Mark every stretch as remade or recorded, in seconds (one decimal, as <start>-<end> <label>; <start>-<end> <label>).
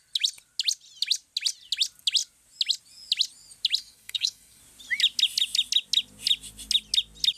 0.0-3.8 recorded; 3.8-4.6 remade; 4.6-7.4 recorded